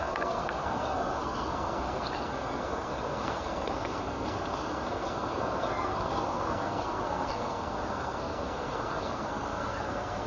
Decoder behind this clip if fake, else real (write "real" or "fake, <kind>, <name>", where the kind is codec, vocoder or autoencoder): fake, codec, SNAC